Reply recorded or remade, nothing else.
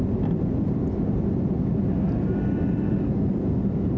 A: recorded